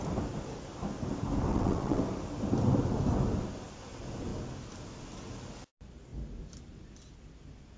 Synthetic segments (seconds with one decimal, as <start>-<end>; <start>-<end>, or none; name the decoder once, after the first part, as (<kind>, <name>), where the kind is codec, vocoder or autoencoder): 1.5-2.0 (vocoder, WaveNeXt)